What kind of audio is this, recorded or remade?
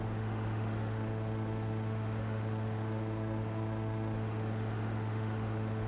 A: remade